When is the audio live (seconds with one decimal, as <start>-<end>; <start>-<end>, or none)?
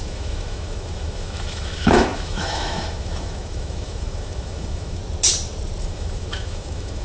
5.0-5.8